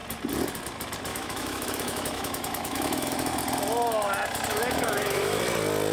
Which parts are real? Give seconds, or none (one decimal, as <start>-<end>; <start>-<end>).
0.0-1.1; 3.4-4.5; 5.4-5.9